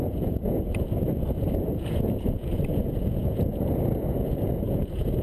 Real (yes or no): no